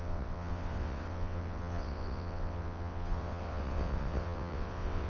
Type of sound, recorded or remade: remade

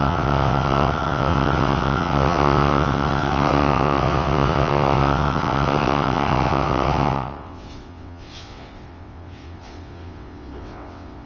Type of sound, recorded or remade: remade